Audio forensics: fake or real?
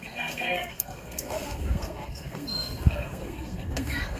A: fake